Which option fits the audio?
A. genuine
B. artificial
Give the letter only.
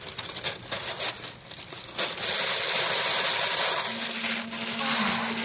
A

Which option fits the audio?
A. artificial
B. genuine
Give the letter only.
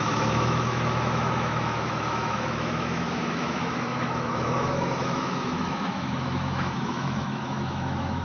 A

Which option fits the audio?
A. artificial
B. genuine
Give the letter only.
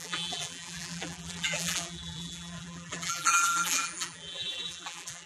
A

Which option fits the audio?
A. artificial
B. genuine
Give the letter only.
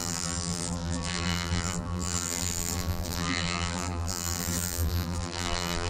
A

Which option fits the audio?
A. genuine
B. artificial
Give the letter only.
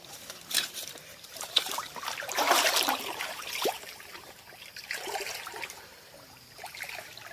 B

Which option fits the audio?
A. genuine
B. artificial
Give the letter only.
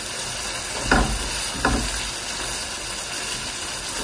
A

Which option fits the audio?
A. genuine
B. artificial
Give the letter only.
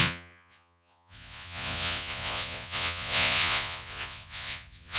B